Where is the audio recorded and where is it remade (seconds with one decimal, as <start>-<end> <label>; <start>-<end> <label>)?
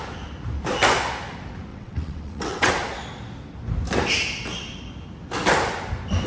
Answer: 0.0-1.7 recorded; 1.7-2.7 remade; 2.7-6.3 recorded